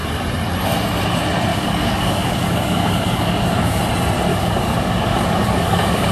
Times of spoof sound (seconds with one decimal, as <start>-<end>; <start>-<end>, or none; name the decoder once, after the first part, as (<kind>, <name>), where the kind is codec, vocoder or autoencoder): 1.5-3.8 (codec, DAC); 4.3-6.1